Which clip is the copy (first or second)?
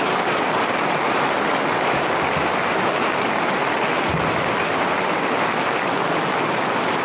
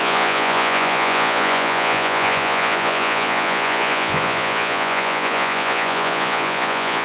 second